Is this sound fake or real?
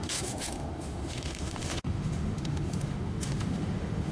fake